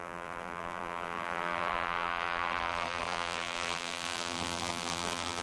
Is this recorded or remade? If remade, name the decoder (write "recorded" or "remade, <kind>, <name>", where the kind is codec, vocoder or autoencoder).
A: remade, vocoder, BigVGAN v2